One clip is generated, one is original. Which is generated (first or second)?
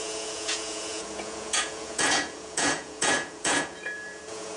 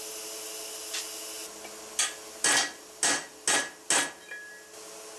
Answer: first